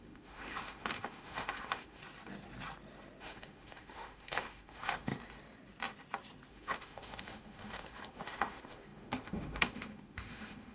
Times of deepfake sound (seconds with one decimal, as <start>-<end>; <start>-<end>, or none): 0.0-2.0; 3.2-5.1; 6.5-10.7